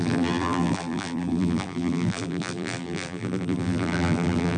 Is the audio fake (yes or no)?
yes